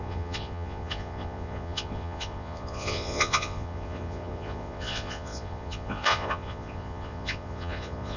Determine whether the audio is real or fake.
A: fake